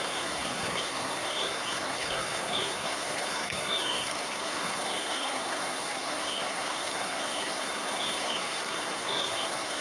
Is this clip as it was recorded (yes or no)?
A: no